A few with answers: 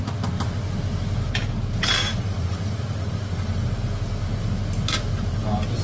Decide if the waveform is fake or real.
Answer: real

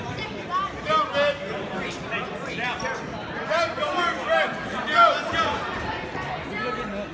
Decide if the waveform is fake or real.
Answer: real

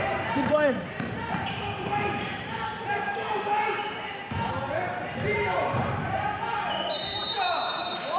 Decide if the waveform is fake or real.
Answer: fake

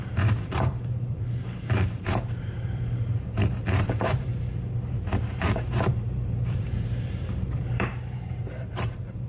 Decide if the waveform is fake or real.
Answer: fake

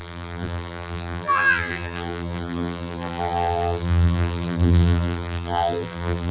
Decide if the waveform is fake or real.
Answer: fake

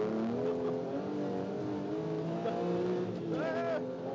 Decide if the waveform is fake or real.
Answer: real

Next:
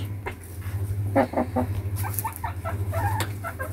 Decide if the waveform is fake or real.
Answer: real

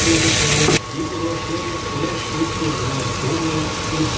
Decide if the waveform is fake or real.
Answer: real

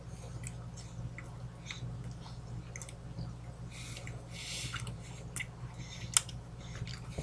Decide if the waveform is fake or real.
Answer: real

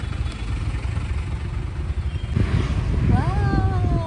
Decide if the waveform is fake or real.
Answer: real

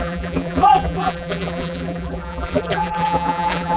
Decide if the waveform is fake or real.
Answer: fake